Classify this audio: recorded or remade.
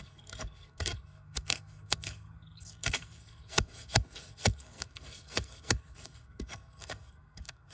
remade